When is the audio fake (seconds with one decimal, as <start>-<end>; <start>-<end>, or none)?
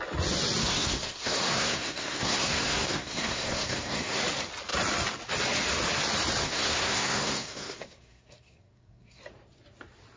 0.6-4.2; 6.4-9.2